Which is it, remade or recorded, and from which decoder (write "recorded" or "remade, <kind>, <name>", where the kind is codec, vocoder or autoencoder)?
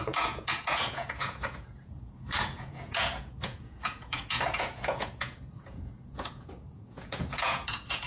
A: remade, vocoder, Vocos